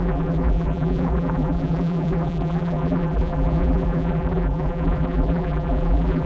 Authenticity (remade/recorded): remade